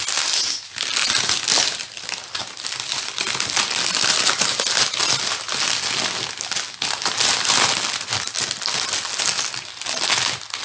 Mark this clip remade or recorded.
recorded